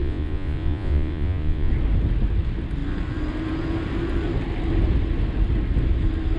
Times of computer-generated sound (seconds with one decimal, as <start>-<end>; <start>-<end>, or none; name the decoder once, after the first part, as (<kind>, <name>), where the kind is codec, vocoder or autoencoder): 0.0-1.7 (vocoder, Vocos)